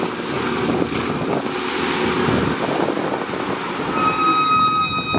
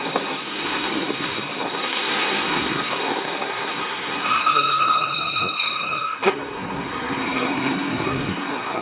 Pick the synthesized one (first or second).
second